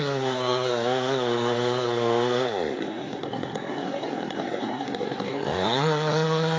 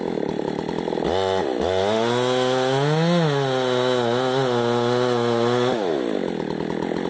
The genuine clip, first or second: second